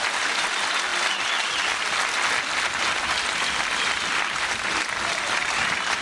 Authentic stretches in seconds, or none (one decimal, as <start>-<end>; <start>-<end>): 0.0-6.0